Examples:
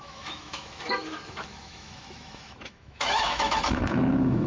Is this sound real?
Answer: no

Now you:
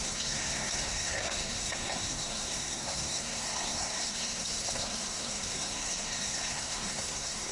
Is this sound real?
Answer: no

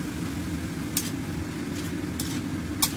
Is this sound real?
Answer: yes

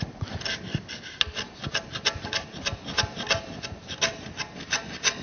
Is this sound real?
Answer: yes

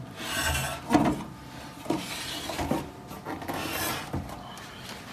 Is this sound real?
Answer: yes